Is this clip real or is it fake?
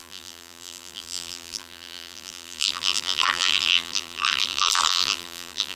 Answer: fake